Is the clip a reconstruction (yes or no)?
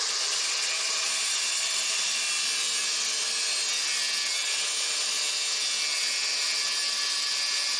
no